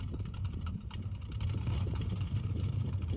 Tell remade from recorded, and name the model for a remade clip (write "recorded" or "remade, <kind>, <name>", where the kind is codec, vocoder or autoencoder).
remade, vocoder, BigVGAN v2